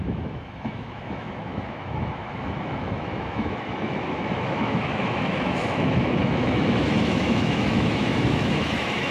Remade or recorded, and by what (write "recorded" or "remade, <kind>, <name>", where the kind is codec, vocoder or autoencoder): remade, autoencoder, DAC-VAE